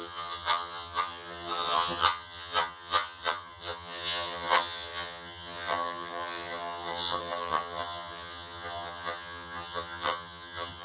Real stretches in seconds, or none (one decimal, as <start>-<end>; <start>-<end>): none